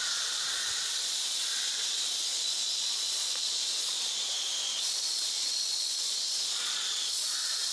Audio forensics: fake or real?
fake